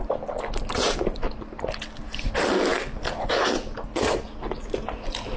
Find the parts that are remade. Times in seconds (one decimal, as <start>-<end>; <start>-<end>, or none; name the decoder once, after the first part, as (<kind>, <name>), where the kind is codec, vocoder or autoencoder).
none